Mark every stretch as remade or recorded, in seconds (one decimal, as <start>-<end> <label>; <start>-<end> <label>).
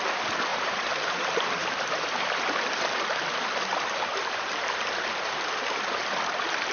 0.0-0.5 recorded; 0.5-2.8 remade; 2.8-3.3 recorded; 3.3-6.0 remade; 6.0-6.7 recorded